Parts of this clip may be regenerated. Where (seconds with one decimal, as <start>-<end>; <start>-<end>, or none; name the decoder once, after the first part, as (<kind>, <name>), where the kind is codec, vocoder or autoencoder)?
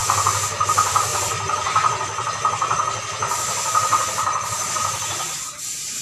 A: 0.0-0.6 (vocoder, BigVGAN v2); 1.1-4.7